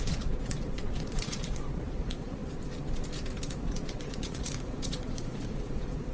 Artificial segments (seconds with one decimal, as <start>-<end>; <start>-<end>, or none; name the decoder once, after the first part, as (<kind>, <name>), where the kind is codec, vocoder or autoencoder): 0.0-2.4 (vocoder, Vocos); 3.5-6.1